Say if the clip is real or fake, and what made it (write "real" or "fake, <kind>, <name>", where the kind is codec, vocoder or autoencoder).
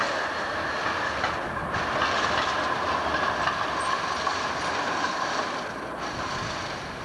real